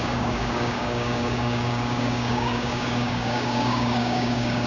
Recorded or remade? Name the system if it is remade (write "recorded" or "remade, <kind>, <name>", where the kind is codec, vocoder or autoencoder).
remade, codec, DAC